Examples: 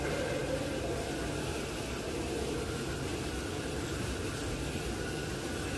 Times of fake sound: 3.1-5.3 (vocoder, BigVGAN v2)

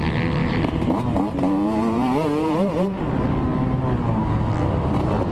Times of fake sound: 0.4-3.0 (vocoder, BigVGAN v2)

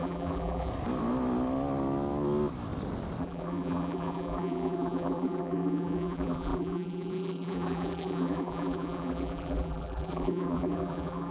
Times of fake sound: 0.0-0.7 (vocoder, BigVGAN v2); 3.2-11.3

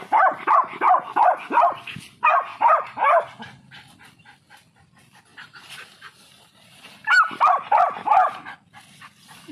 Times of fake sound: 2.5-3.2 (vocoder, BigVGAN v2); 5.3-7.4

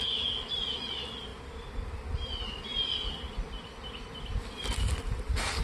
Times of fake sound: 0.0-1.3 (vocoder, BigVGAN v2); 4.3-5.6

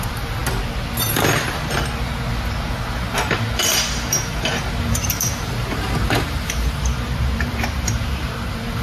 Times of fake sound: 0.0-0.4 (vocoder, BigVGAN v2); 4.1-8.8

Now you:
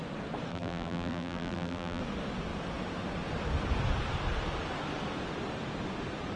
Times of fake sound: 0.5-2.0 (vocoder, BigVGAN v2)

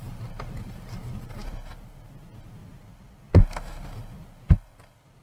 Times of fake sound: 0.0-1.4 (vocoder, BigVGAN v2); 4.5-5.2